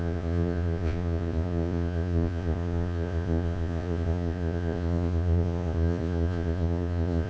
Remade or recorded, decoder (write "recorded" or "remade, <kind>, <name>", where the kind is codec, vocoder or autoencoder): remade, vocoder, Vocos